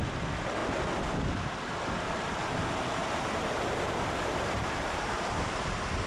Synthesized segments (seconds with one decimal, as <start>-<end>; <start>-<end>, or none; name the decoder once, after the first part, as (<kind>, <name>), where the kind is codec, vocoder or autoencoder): 3.0-6.1 (vocoder, BigVGAN v2)